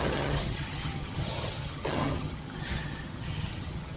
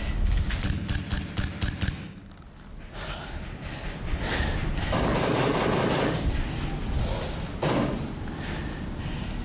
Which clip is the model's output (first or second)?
first